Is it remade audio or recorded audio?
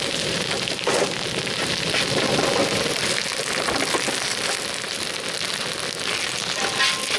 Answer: recorded